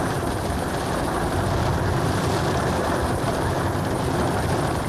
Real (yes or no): yes